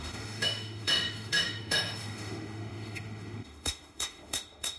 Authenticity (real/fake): fake